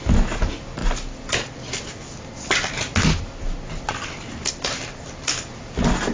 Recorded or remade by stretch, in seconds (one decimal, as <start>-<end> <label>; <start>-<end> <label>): 0.0-6.1 recorded